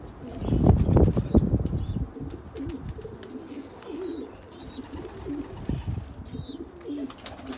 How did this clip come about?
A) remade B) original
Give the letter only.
B